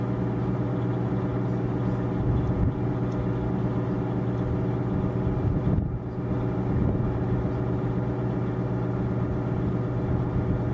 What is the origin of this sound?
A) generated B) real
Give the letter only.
B